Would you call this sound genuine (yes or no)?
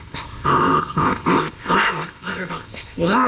no